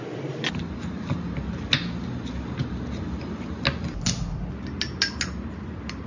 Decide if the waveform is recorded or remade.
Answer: recorded